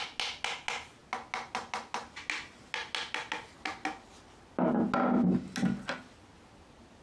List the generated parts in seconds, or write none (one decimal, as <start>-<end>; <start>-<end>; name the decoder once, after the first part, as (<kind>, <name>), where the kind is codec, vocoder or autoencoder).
none